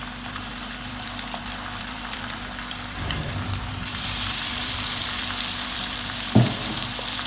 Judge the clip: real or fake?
fake